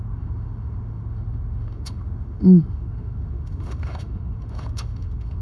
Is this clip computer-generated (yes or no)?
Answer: yes